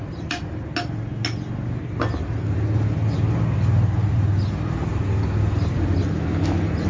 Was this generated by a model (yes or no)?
no